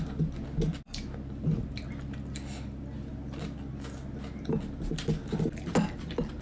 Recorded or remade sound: recorded